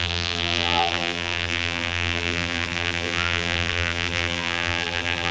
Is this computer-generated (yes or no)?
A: yes